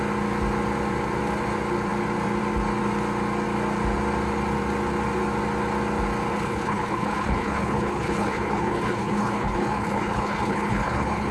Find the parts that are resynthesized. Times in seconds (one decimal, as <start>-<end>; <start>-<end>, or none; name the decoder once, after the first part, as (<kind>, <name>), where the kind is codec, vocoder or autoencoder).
6.3-11.3 (codec, HILCodec)

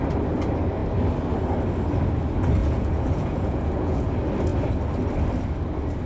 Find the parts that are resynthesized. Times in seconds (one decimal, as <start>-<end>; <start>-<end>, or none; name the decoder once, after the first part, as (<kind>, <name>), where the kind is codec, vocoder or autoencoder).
2.6-4.1 (vocoder, Vocos)

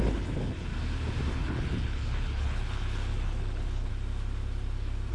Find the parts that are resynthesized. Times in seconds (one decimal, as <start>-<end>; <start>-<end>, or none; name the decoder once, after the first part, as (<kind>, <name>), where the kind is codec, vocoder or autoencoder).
0.0-0.7 (codec, HILCodec); 1.3-3.9

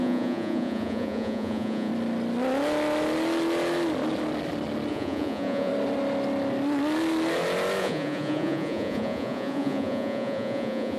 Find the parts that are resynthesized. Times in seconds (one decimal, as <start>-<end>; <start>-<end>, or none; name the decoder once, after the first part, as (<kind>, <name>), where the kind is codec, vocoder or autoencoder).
0.0-1.9 (vocoder, Vocos); 4.9-5.7; 7.8-11.0

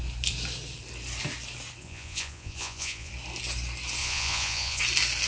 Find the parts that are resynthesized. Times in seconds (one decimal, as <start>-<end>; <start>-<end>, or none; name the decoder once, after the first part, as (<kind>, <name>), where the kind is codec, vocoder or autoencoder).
1.8-3.1 (vocoder, Vocos); 4.0-4.8

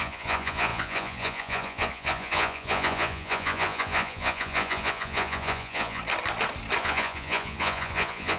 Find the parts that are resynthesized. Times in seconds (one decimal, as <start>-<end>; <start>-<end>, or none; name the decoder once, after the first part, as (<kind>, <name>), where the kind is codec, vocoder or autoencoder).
0.0-6.0 (vocoder, Vocos); 6.8-8.4